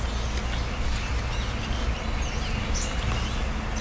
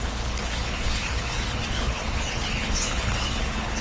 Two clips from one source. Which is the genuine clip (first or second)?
first